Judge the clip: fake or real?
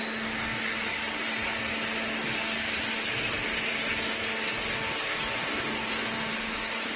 real